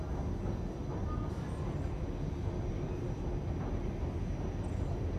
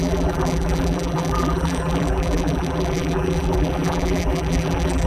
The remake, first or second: second